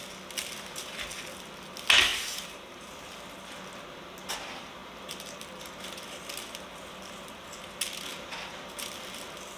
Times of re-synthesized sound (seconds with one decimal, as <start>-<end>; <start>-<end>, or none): 2.1-2.9